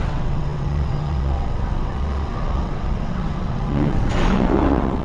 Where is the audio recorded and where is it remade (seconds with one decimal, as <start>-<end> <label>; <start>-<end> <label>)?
0.0-5.0 remade